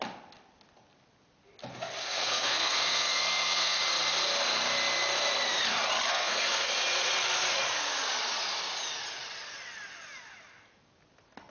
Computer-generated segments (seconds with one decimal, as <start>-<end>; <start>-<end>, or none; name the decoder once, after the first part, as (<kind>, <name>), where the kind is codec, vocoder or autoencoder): 2.0-3.8 (codec, SNAC); 6.1-6.7